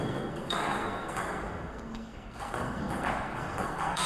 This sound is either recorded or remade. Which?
remade